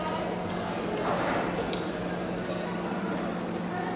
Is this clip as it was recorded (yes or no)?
yes